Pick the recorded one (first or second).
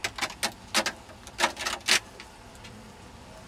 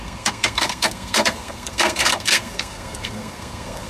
first